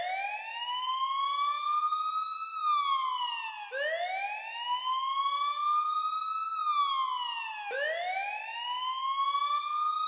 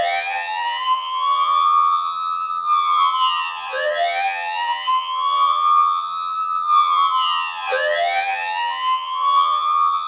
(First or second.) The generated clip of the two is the second